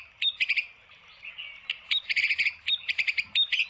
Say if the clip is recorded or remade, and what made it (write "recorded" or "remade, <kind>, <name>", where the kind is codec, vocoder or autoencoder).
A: recorded